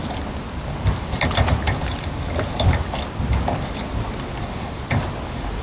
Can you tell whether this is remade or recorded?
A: recorded